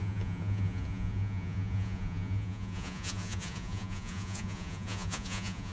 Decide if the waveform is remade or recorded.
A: remade